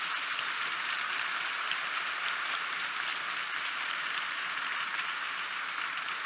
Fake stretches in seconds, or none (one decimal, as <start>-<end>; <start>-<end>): 0.0-3.1; 3.7-6.3